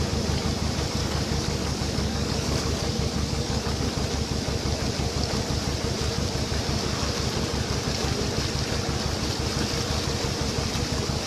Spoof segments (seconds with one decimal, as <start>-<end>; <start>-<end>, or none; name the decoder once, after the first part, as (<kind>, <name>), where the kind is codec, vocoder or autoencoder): 1.0-3.8 (codec, DAC)